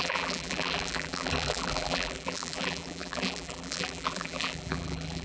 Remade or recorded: remade